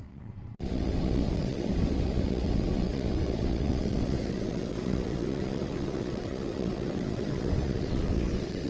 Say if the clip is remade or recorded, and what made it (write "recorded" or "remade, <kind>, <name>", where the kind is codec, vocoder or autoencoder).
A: remade, vocoder, WaveNeXt